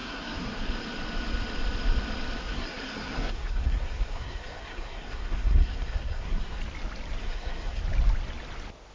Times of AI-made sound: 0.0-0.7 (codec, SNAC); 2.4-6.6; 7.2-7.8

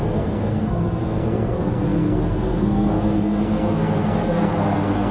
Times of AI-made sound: 0.0-5.1 (codec, SNAC)

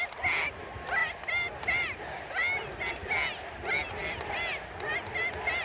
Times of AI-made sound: none

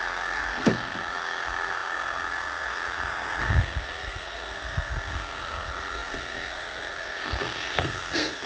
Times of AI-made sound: 0.0-8.5 (codec, SNAC)

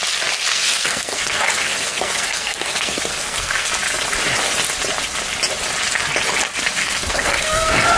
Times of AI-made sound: 0.5-3.7 (codec, SNAC); 6.8-8.0

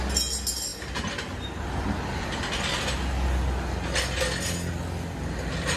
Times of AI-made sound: none

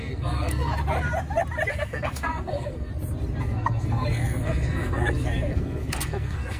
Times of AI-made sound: 0.0-0.7 (codec, SNAC); 1.7-2.9; 3.4-6.6

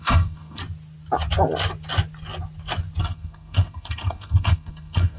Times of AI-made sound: 0.0-0.6 (codec, SNAC); 3.0-5.2